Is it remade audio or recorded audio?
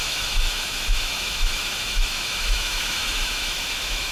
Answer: remade